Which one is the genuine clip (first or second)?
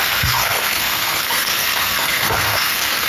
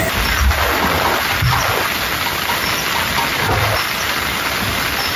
second